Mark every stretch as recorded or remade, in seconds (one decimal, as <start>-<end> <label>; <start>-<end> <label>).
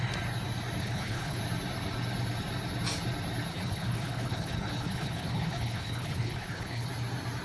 0.0-0.8 recorded; 0.8-1.4 remade; 1.4-3.5 recorded; 3.5-6.9 remade; 6.9-7.4 recorded